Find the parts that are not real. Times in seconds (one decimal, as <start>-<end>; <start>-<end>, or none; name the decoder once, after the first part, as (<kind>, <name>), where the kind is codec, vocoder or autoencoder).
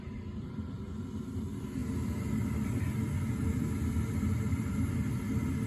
none